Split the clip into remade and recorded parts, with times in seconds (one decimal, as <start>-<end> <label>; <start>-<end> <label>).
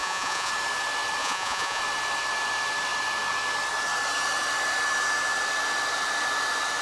0.0-0.5 remade; 0.5-1.2 recorded; 1.2-1.8 remade; 1.8-6.8 recorded